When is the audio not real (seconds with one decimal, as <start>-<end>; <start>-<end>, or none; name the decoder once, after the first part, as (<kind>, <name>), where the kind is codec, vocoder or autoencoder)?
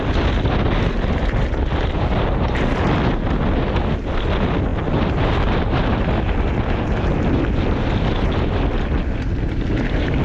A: none